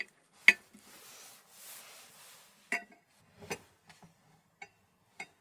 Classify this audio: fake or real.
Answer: real